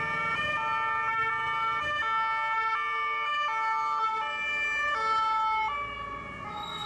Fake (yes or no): no